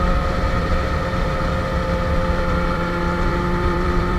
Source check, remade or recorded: remade